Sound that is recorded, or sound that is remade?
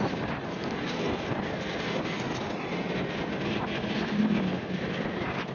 recorded